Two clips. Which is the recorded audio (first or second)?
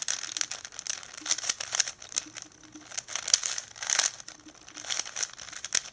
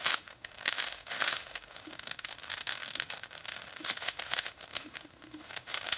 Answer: first